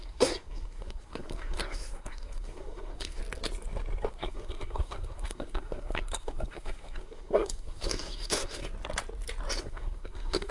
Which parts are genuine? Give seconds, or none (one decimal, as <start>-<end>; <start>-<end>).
3.2-4.1; 8.6-9.6